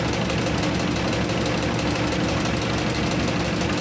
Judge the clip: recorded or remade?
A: recorded